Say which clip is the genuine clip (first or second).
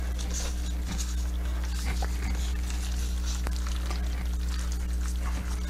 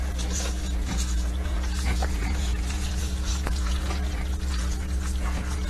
first